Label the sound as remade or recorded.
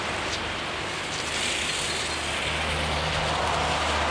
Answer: recorded